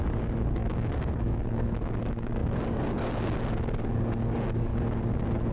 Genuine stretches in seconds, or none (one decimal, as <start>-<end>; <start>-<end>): 4.7-5.5